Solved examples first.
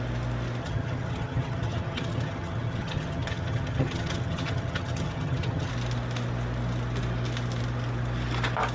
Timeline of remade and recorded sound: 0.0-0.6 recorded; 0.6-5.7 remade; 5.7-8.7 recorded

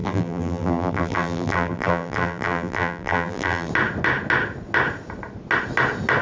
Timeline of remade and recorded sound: 0.0-3.7 remade; 3.7-6.2 recorded

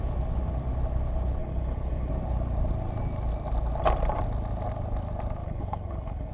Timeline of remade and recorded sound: 0.0-1.4 recorded; 1.4-2.1 remade; 2.1-5.4 recorded; 5.4-6.3 remade

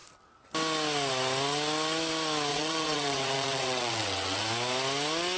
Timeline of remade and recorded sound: 0.0-2.5 recorded; 2.5-4.4 remade; 4.4-5.4 recorded

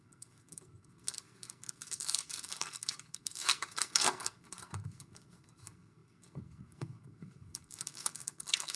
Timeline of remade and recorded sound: 0.0-8.8 remade